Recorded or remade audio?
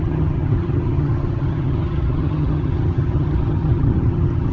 remade